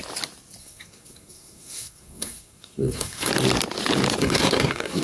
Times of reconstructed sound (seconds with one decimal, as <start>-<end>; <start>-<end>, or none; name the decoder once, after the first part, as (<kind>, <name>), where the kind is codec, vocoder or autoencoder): 0.6-3.3 (codec, SNAC); 4.2-5.0